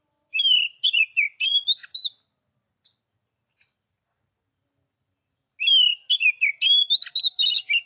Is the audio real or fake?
real